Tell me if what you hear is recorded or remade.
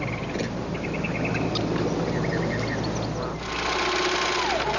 recorded